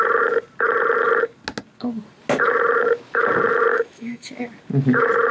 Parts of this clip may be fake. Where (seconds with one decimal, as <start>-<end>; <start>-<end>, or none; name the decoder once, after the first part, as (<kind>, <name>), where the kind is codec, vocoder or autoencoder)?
3.7-4.3 (autoencoder, DAC-VAE)